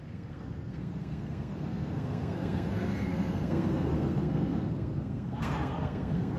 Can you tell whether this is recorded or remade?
remade